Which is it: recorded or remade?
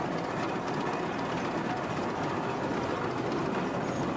recorded